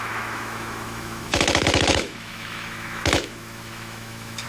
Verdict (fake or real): fake